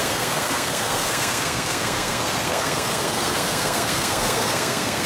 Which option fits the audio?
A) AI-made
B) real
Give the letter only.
A